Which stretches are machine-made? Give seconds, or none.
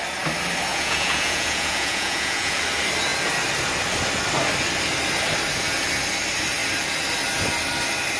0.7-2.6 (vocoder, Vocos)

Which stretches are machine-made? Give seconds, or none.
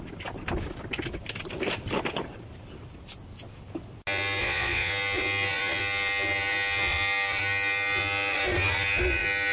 4.4-4.9 (vocoder, Vocos)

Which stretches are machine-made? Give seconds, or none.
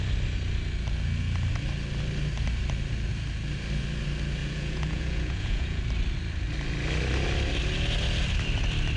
4.4-5.8 (vocoder, Vocos)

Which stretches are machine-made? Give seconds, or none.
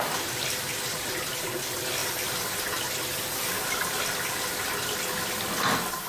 none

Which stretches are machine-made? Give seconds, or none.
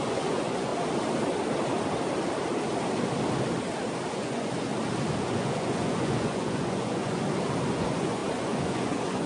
0.0-0.7 (vocoder, Vocos); 4.1-4.7; 5.2-7.2; 7.7-9.3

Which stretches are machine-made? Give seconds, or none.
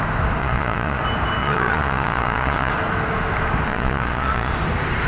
0.4-1.0 (vocoder, Vocos); 1.4-2.7; 3.7-4.5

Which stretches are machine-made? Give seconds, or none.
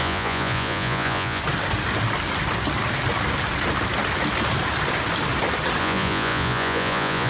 0.0-1.4 (vocoder, Vocos); 5.8-7.3